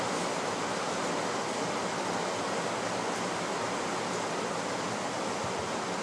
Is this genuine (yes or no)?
yes